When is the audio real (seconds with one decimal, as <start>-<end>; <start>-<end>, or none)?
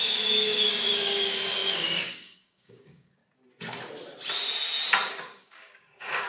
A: 3.2-5.1